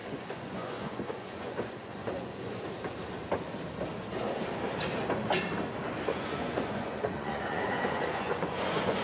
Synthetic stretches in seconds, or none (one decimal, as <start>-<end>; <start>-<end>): 0.0-2.6; 6.1-9.0